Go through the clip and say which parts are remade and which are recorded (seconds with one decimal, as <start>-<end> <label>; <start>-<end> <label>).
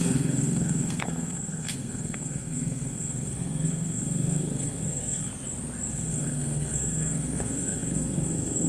0.0-5.3 remade; 5.3-5.9 recorded; 5.9-8.7 remade